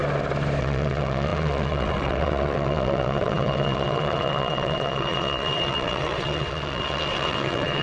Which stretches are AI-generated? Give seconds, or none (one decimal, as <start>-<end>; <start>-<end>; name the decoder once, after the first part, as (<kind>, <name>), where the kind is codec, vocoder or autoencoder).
0.6-7.8 (vocoder, WaveNeXt)